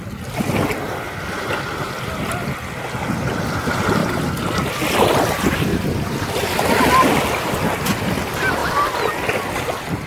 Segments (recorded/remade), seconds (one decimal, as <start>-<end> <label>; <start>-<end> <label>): 0.0-4.0 recorded; 4.0-4.7 remade; 4.7-5.7 recorded; 5.7-6.3 remade; 6.3-10.1 recorded